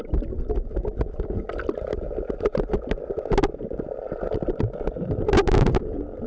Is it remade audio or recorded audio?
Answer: recorded